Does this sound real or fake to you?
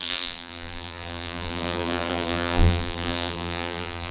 fake